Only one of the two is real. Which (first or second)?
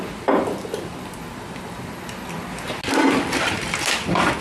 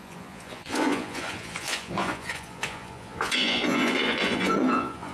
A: first